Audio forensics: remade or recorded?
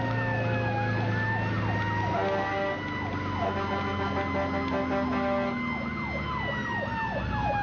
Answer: recorded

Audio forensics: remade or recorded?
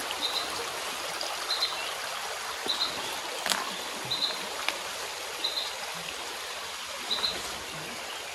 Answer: recorded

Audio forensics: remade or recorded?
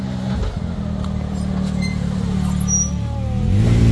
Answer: recorded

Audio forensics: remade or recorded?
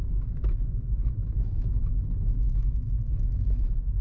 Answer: remade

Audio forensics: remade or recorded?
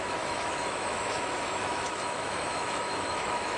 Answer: remade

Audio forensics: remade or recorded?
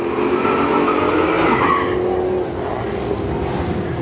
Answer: recorded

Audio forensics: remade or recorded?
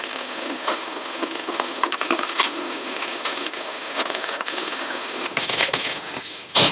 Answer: remade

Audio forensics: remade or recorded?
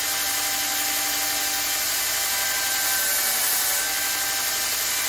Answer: recorded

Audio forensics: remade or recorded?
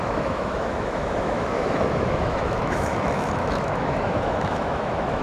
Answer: remade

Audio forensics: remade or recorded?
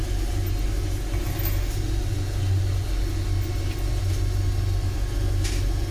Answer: recorded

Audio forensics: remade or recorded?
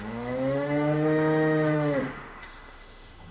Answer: remade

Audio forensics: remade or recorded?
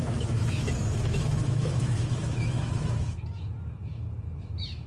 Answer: remade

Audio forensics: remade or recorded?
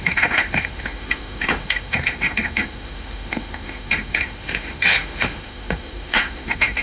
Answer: remade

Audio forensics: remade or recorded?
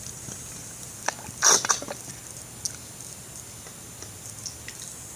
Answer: recorded